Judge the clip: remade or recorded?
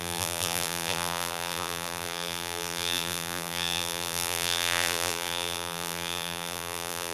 remade